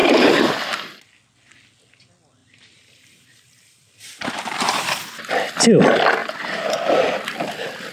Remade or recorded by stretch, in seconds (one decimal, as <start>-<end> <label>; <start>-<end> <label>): 0.0-0.6 remade; 0.6-2.4 recorded; 2.4-5.2 remade; 5.2-7.9 recorded